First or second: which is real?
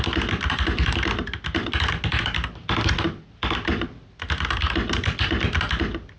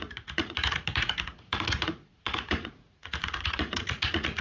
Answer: first